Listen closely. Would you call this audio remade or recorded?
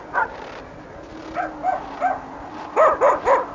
recorded